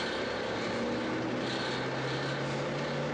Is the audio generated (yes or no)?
no